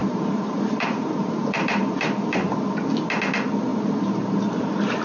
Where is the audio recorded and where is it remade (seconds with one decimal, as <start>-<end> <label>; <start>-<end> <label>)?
0.0-2.5 remade; 2.5-3.7 recorded; 3.7-5.0 remade